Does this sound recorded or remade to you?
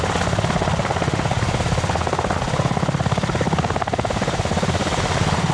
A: recorded